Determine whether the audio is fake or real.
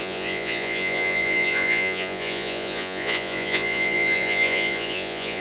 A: fake